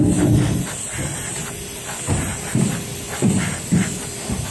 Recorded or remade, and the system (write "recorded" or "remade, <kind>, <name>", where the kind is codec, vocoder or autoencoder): recorded